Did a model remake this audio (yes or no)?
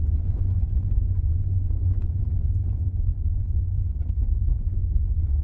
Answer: yes